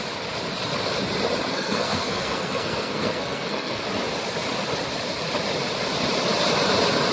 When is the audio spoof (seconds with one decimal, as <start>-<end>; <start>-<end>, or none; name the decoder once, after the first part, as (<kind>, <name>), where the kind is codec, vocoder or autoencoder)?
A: 1.5-3.8 (codec, SNAC)